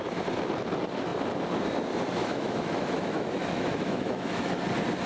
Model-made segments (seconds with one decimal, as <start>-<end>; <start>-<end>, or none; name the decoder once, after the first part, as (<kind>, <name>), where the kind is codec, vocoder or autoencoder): 2.2-4.6 (autoencoder, DAC-VAE)